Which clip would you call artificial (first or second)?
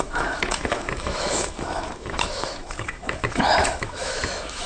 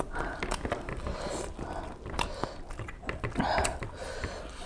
first